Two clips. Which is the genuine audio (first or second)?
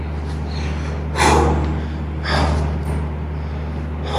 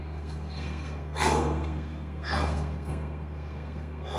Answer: first